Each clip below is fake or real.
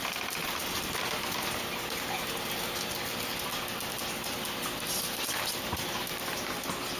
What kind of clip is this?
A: real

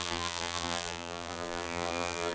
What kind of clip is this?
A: fake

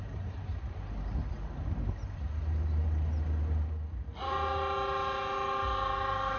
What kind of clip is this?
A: real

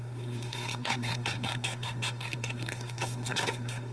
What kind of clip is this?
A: fake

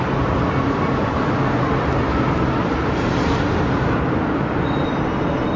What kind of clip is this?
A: real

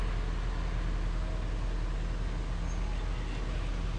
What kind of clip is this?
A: real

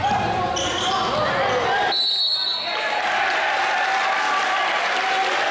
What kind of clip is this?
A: real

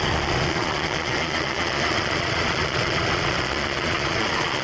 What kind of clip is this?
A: fake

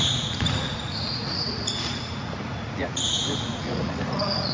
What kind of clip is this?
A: fake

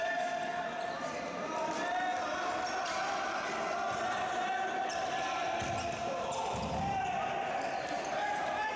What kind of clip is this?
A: real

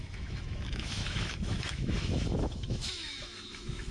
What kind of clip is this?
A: fake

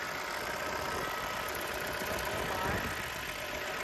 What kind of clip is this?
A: real